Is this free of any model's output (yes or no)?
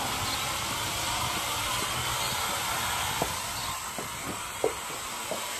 yes